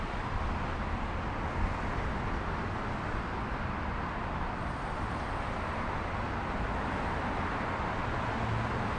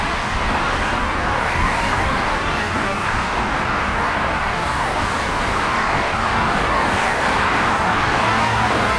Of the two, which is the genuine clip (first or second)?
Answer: first